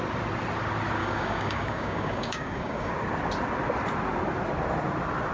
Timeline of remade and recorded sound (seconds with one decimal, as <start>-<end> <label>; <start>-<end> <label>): 0.0-1.0 recorded; 1.0-2.9 remade; 2.9-5.3 recorded